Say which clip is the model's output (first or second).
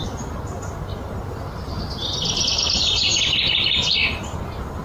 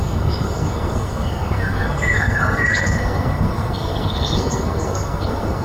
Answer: second